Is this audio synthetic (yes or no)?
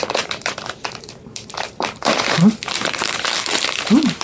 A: yes